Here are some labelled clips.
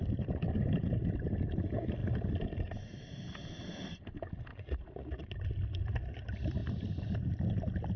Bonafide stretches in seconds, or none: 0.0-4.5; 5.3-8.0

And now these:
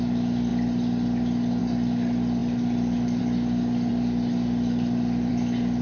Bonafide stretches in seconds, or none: 0.0-5.8

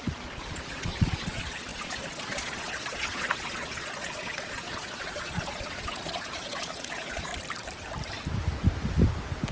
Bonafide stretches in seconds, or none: 7.3-9.5

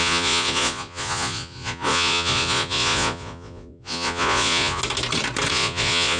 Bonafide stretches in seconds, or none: 4.8-5.5

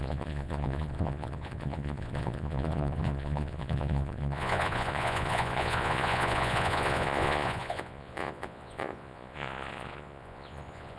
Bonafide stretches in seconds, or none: none